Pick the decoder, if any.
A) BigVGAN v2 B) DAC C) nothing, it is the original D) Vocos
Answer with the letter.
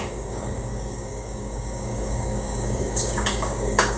B